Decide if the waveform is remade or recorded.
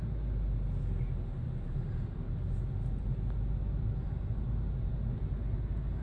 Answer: recorded